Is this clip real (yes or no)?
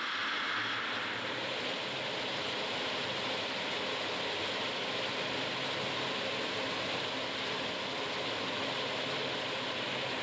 yes